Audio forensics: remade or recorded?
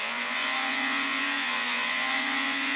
remade